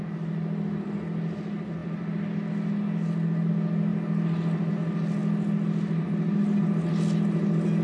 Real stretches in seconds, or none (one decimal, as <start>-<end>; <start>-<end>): 0.0-7.8